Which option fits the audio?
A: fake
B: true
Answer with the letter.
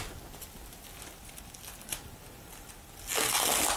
B